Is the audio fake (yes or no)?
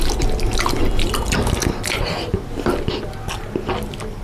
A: no